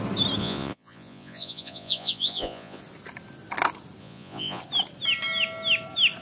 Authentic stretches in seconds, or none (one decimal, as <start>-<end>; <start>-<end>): 0.0-0.4; 2.8-4.0; 4.6-6.2